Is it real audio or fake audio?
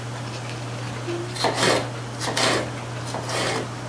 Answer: real